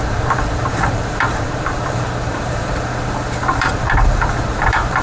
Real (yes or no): no